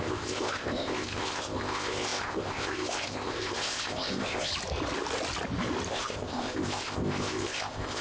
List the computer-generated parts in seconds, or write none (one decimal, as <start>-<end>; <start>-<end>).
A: 0.0-4.5; 5.9-8.0